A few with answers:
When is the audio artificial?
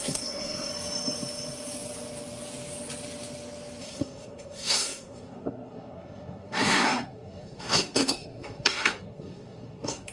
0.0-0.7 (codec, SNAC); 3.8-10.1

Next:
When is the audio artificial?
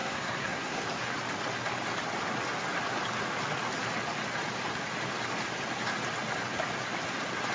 0.0-0.8 (codec, SNAC)